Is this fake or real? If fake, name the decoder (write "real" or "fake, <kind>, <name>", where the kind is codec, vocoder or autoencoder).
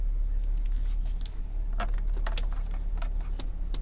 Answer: real